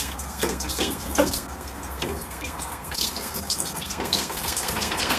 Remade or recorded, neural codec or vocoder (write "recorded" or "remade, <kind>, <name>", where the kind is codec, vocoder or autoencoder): remade, codec, SNAC